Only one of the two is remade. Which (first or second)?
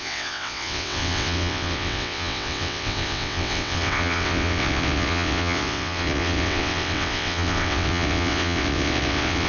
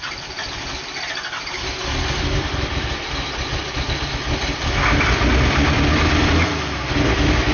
first